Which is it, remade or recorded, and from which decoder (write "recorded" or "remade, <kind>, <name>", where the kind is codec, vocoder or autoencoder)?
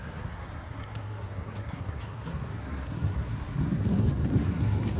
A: remade, codec, SNAC